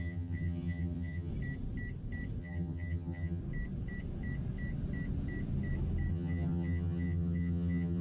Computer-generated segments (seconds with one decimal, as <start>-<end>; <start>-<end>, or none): 0.0-1.3; 2.4-3.4; 6.1-8.0